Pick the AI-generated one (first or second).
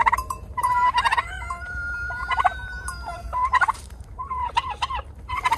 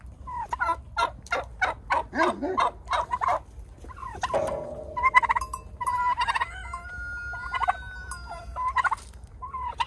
first